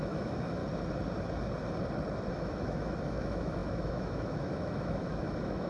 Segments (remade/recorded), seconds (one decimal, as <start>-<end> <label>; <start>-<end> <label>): 0.0-0.6 remade; 0.6-2.3 recorded; 2.3-5.7 remade